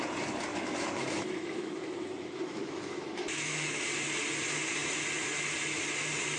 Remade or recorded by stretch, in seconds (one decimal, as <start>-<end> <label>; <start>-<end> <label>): 0.0-0.5 recorded; 0.5-3.8 remade; 3.8-6.4 recorded